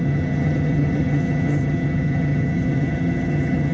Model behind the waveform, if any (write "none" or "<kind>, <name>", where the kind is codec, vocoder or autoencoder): vocoder, HiFi-GAN